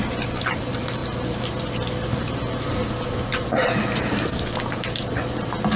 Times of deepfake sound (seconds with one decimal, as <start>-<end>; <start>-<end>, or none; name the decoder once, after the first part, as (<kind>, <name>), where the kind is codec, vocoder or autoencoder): none